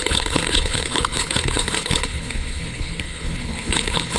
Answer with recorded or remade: remade